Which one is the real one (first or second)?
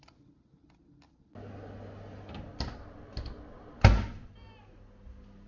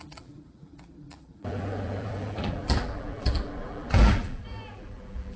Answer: first